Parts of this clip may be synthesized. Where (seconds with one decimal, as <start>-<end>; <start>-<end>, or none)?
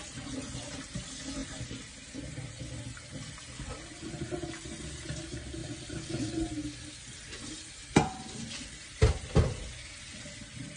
1.4-2.6; 5.6-6.3; 7.8-9.6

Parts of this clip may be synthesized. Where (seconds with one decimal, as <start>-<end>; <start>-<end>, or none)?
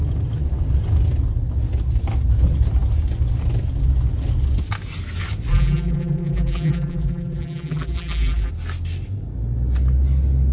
5.5-8.5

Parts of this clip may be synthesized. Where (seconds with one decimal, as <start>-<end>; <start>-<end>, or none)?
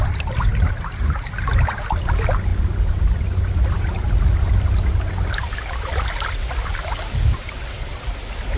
none